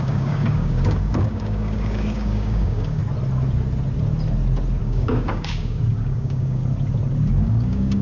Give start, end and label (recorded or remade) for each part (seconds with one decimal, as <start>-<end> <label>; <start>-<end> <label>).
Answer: 0.0-3.0 remade; 3.0-4.8 recorded; 4.8-6.6 remade; 6.6-7.4 recorded; 7.4-8.0 remade